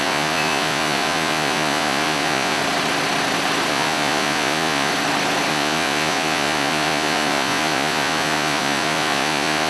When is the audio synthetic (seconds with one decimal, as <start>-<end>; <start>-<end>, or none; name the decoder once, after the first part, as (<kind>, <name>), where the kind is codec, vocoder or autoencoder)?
0.0-2.6 (vocoder, Vocos); 3.7-4.9; 5.5-9.7